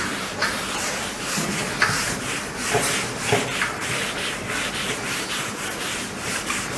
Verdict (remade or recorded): remade